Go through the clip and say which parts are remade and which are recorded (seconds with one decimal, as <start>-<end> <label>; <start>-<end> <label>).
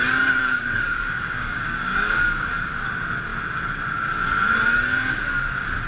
0.0-0.4 recorded; 0.4-2.7 remade; 2.7-5.9 recorded